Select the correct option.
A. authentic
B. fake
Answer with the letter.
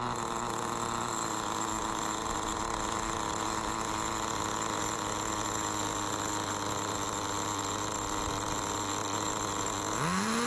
A